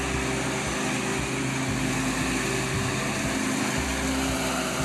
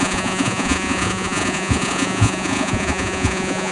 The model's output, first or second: second